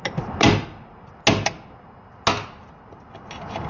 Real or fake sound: real